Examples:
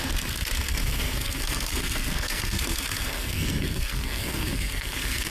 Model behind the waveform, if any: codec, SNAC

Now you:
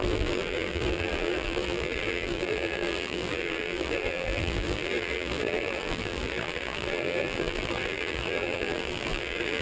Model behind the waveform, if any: vocoder, BigVGAN v2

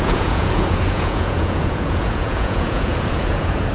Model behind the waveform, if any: vocoder, Vocos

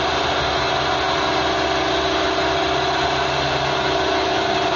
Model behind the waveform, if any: none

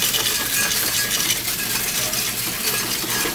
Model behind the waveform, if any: vocoder, BigVGAN v2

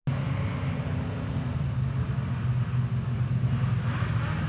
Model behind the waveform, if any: none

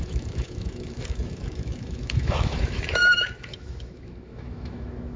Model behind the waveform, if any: autoencoder, DAC-VAE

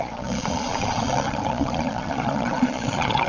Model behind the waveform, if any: vocoder, Vocos